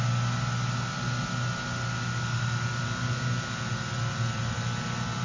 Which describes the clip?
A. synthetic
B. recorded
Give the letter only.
B